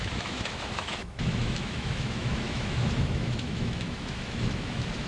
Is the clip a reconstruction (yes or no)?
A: yes